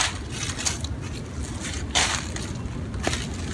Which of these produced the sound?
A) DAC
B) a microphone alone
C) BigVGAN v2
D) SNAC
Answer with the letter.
B